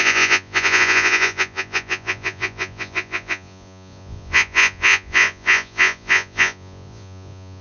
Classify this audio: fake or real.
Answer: fake